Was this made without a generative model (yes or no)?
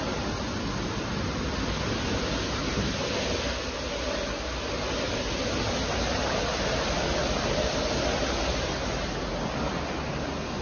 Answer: yes